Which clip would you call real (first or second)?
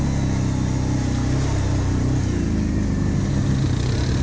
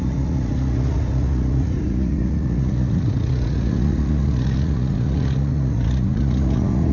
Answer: first